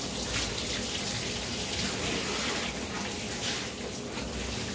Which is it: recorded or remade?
recorded